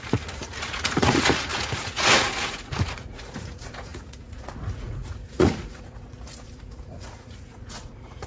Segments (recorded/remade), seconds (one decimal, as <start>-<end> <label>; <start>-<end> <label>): 0.0-8.3 remade